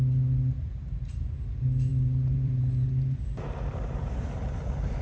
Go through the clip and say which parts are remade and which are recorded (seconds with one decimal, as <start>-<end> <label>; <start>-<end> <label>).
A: 0.0-1.9 recorded; 1.9-5.0 remade